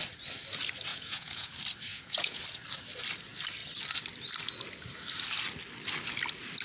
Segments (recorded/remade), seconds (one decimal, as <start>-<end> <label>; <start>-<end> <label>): 0.0-0.9 recorded; 0.9-1.5 remade; 1.5-1.9 recorded; 1.9-2.4 remade; 2.4-6.6 recorded